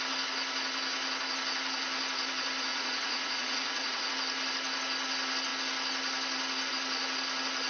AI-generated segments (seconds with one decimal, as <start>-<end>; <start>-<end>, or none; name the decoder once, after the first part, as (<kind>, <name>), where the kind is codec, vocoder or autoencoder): 2.7-4.1 (vocoder, Vocos)